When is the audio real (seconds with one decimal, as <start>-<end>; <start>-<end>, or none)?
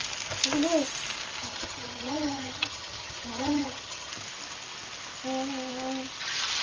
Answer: 0.0-1.4; 4.1-6.6